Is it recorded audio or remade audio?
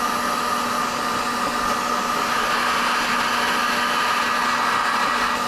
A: recorded